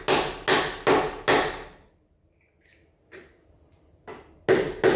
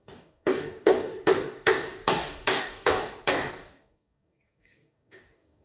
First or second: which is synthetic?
second